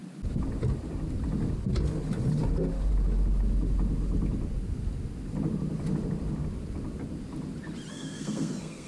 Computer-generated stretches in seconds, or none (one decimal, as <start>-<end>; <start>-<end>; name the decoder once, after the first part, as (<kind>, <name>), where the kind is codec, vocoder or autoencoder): 7.9-8.9 (codec, SNAC)